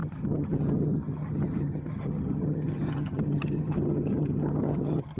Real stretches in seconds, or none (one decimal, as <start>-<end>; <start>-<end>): none